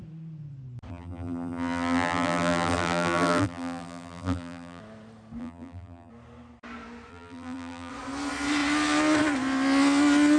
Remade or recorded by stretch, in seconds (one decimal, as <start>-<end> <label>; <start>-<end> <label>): 0.0-0.9 recorded; 0.9-4.8 remade; 4.8-5.4 recorded; 5.4-6.1 remade; 6.1-7.1 recorded; 7.1-7.9 remade; 7.9-10.4 recorded